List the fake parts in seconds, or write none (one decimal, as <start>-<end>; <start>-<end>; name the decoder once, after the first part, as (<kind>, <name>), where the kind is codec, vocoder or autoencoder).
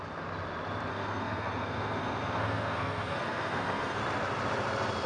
0.9-4.0 (codec, SNAC)